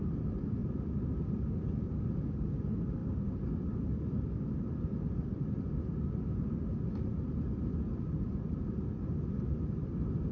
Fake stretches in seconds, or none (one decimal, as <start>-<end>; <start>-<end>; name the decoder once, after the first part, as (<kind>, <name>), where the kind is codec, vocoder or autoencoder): none